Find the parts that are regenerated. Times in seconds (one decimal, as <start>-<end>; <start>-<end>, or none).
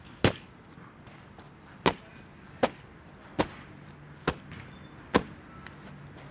none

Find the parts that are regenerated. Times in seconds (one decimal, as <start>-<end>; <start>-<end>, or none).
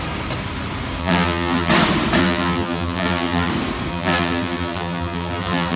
1.0-1.7; 2.2-3.5; 3.9-5.8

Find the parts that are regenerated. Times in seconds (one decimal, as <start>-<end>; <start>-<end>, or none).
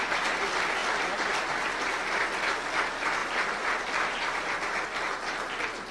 0.8-1.5; 3.2-4.4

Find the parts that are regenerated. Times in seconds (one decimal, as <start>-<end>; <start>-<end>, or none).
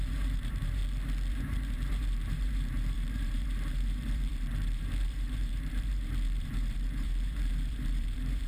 0.0-0.8; 1.3-8.5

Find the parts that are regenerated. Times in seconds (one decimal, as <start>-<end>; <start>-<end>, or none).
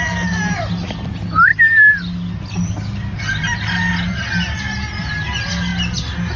none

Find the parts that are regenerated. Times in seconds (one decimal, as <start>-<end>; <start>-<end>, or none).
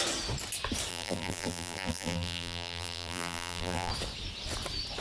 0.9-3.9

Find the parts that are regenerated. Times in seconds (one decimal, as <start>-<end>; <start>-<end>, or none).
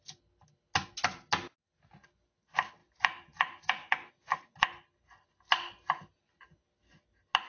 2.8-4.1